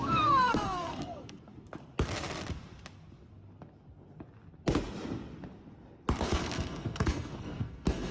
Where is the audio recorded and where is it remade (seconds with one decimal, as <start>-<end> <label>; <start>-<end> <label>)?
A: 0.0-1.5 remade; 1.5-6.2 recorded; 6.2-8.1 remade